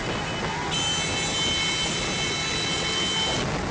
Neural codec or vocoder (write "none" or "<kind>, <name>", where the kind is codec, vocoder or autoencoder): none